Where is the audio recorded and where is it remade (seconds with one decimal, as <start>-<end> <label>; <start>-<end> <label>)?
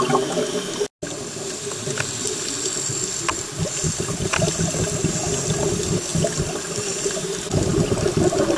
0.0-6.1 recorded; 6.1-7.7 remade; 7.7-8.6 recorded